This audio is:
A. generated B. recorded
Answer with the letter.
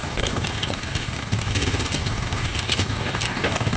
A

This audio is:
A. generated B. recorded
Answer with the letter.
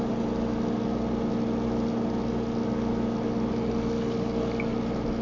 B